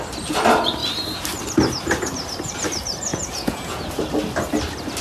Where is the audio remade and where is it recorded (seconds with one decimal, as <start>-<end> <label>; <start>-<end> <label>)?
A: 0.0-3.1 recorded; 3.1-3.9 remade; 3.9-5.0 recorded